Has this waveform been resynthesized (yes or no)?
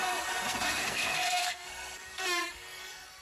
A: yes